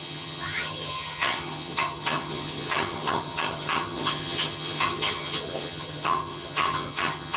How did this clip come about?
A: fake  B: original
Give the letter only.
A